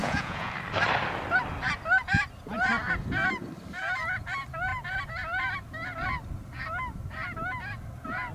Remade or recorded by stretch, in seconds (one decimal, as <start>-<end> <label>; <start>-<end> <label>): 0.0-0.5 remade; 0.5-8.3 recorded